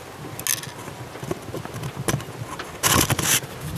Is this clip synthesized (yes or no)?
no